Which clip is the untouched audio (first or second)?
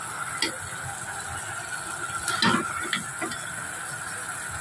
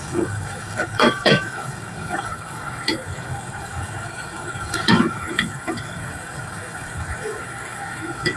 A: first